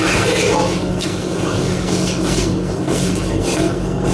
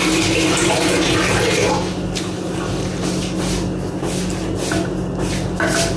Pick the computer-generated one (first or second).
first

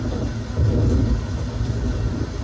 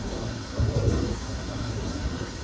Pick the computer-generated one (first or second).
second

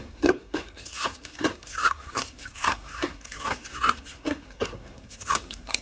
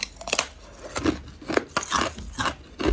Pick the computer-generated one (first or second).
first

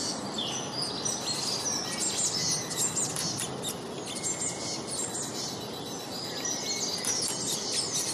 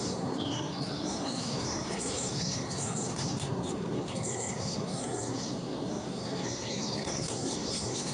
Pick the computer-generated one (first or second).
second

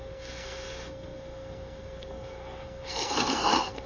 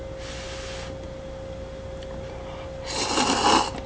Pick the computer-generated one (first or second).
first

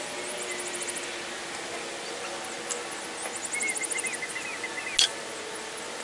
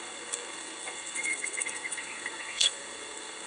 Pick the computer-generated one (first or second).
second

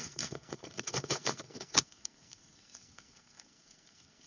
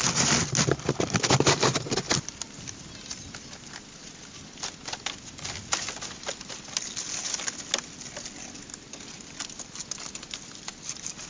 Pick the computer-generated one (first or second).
first